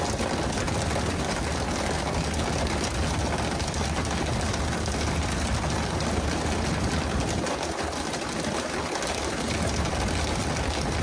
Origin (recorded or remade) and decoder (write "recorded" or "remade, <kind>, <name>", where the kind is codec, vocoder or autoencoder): recorded